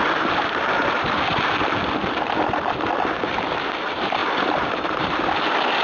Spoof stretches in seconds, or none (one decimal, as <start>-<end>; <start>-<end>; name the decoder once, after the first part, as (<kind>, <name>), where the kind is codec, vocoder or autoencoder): none